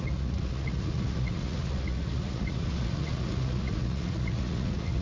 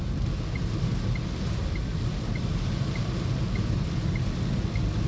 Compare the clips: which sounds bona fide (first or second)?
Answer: second